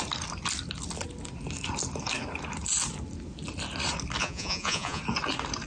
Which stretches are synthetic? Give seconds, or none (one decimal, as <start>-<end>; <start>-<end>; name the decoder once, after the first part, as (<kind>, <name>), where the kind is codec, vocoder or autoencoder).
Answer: 4.2-5.0 (vocoder, Vocos)